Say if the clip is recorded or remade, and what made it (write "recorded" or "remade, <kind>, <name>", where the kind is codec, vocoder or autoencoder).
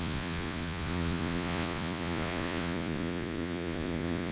remade, vocoder, Vocos